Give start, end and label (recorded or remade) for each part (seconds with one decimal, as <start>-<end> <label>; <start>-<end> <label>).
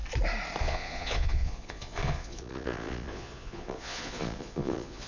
0.0-0.6 recorded; 0.6-5.1 remade